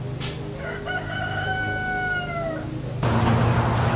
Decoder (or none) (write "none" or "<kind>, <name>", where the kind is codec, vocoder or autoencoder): none